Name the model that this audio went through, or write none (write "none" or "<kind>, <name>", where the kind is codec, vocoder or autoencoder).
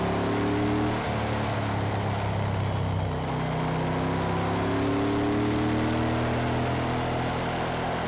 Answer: none